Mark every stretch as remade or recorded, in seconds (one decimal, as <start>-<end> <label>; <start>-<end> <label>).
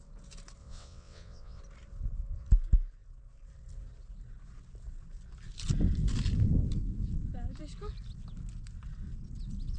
0.0-0.6 recorded; 0.6-1.6 remade; 1.6-9.8 recorded